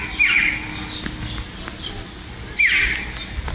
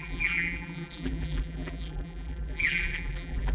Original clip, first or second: first